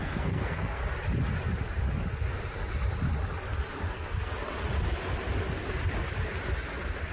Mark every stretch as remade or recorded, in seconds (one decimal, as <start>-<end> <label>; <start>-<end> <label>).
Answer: 0.0-0.8 remade; 0.8-3.9 recorded; 3.9-4.3 remade; 4.3-7.1 recorded

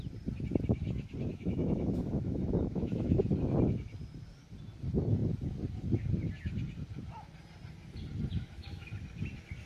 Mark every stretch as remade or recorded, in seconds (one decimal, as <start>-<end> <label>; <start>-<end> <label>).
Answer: 0.0-1.3 recorded; 1.3-3.2 remade; 3.2-8.3 recorded; 8.3-8.9 remade; 8.9-9.7 recorded

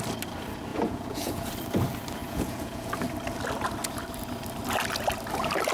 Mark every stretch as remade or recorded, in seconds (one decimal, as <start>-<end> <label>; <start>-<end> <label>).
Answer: 0.0-0.7 recorded; 0.7-1.5 remade; 1.5-2.2 recorded; 2.2-2.9 remade; 2.9-5.7 recorded

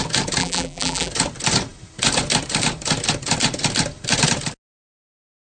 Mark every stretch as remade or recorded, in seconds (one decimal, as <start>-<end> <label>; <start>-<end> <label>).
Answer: 0.0-0.4 recorded; 0.4-1.1 remade; 1.1-5.6 recorded

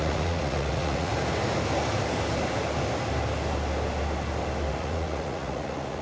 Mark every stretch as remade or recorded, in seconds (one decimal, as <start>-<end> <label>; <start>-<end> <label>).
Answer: 0.0-1.1 remade; 1.1-4.7 recorded; 4.7-6.0 remade

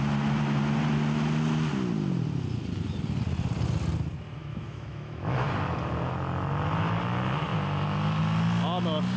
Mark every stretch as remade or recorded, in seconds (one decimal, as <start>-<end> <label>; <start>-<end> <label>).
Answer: 0.0-4.4 recorded; 4.4-5.5 remade; 5.5-9.2 recorded